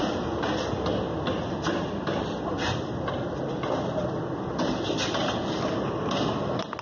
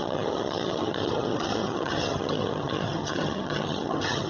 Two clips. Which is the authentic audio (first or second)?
first